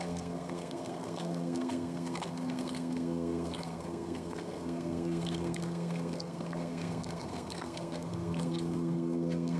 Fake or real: fake